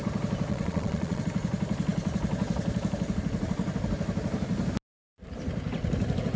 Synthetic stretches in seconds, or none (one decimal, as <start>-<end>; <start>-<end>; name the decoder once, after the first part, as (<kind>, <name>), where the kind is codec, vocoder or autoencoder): 0.5-1.2 (vocoder, Vocos)